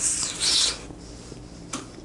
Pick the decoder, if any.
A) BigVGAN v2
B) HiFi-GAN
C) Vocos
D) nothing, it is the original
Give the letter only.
D